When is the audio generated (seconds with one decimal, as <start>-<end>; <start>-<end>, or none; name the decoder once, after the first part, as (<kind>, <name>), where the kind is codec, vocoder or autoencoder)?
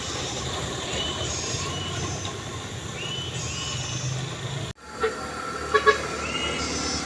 0.0-2.5 (vocoder, BigVGAN v2)